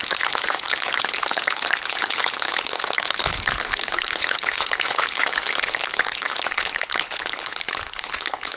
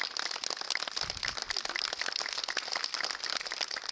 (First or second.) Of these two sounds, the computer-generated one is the first